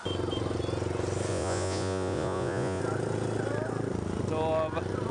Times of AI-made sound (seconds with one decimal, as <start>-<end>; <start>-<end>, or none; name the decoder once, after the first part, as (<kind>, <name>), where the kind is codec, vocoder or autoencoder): 1.3-2.8 (vocoder, Vocos)